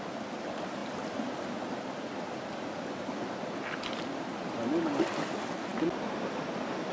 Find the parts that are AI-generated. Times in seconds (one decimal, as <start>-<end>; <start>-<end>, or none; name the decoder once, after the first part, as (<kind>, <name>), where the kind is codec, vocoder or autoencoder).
none